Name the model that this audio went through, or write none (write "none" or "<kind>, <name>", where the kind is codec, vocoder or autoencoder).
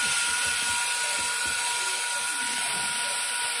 none